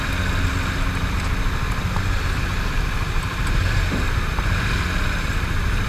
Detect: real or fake real